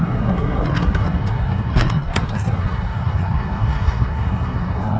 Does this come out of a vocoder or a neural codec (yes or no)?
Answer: yes